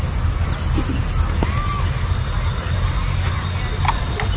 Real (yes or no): yes